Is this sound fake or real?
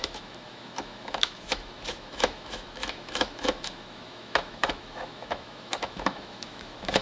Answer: fake